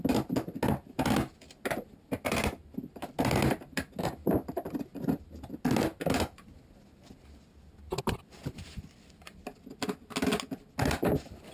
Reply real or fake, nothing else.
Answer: real